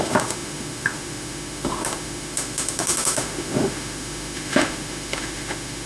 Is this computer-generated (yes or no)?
yes